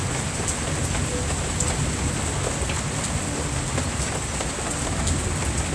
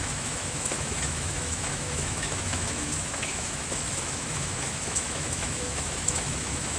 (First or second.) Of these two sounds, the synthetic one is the second